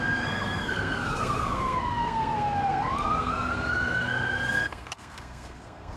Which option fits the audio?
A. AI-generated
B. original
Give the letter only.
A